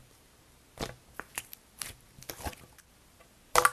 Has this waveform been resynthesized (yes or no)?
no